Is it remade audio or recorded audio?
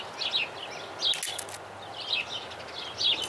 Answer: recorded